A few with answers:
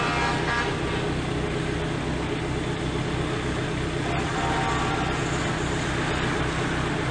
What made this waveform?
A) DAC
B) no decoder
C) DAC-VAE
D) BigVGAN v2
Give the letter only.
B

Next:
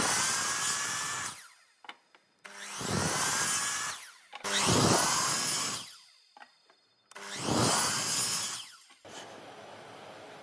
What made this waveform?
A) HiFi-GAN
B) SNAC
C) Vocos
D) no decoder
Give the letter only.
D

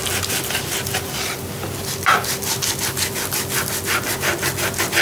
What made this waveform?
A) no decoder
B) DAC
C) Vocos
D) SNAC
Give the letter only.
A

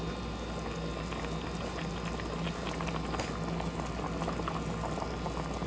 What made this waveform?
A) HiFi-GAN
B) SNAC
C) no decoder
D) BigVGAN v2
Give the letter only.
C